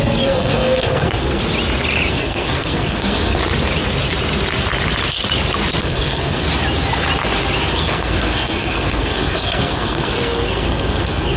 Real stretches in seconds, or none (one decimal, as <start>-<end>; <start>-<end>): 1.4-2.1; 3.4-5.8; 6.5-7.7